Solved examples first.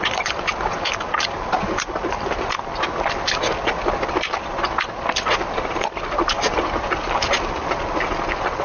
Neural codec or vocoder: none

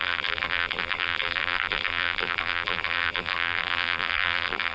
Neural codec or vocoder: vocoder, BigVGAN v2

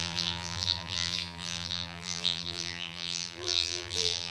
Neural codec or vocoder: vocoder, BigVGAN v2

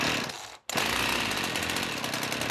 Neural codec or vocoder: none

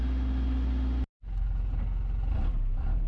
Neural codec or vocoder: none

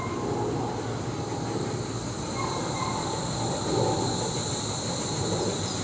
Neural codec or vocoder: vocoder, BigVGAN v2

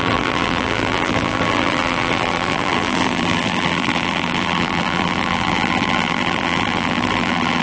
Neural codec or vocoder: vocoder, BigVGAN v2